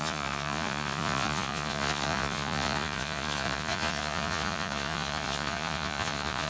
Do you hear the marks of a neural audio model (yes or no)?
yes